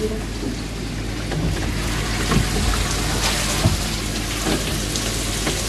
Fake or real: real